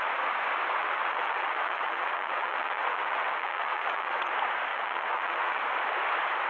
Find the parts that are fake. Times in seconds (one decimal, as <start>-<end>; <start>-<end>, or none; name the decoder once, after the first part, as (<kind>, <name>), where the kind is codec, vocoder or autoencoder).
0.8-4.3 (vocoder, WaveNeXt); 4.7-5.6